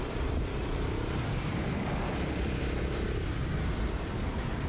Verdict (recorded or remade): remade